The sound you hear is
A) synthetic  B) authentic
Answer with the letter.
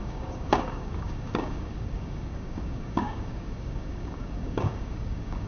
A